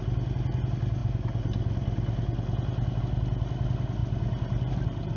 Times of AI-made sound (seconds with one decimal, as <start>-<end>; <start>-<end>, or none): none